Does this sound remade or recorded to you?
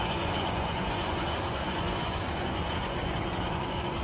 remade